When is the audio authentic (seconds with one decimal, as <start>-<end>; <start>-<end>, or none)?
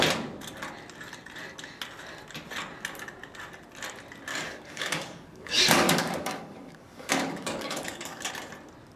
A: 0.0-4.3; 8.3-9.0